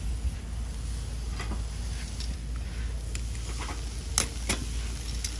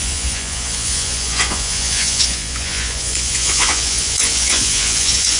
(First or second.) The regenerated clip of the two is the second